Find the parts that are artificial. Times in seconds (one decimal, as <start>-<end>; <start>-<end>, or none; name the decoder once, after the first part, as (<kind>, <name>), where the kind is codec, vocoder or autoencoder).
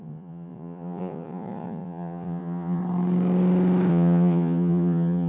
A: 0.0-2.8 (vocoder, Vocos); 3.9-5.3